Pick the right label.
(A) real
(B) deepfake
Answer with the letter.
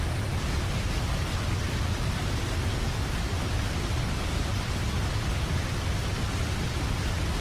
A